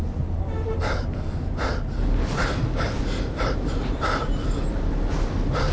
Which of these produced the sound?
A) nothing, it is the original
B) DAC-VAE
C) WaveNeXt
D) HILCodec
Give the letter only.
A